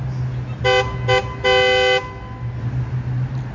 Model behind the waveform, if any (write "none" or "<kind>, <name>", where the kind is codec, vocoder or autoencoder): none